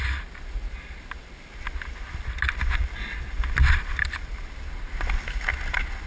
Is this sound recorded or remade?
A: recorded